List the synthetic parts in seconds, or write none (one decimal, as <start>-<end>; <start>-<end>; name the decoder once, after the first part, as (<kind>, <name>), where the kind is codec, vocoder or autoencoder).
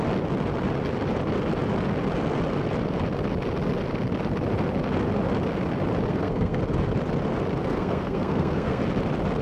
6.1-6.6 (codec, SNAC); 7.6-8.8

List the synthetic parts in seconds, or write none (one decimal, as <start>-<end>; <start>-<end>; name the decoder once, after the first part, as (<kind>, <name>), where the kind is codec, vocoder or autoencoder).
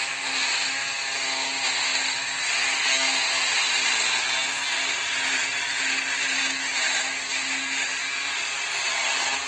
none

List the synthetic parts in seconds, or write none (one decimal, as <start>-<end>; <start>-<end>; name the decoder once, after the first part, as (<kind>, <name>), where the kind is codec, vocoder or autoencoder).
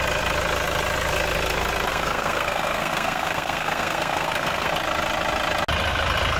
1.9-4.7 (codec, SNAC)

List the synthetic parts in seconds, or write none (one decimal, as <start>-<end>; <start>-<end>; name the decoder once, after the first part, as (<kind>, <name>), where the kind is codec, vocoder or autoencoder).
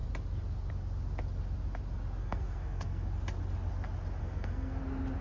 2.2-3.1 (codec, SNAC); 4.2-4.8